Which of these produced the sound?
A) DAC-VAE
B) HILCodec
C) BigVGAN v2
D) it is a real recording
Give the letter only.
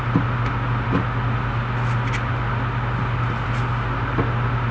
D